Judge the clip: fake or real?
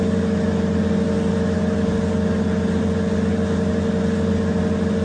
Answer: real